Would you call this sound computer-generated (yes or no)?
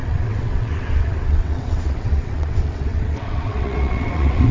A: yes